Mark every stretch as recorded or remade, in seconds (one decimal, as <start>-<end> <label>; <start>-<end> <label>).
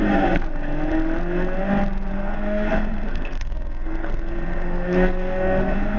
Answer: 0.0-2.1 recorded; 2.1-6.0 remade